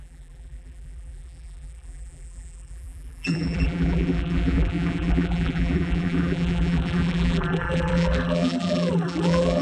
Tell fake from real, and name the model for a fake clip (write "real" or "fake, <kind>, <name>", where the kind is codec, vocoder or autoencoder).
fake, vocoder, BigVGAN v2